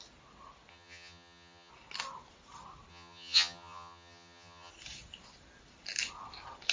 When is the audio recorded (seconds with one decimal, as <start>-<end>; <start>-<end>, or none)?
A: 0.0-0.7; 1.7-2.9; 4.7-6.7